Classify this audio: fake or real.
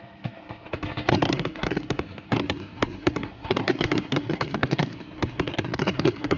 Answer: fake